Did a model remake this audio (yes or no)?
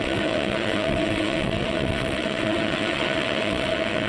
yes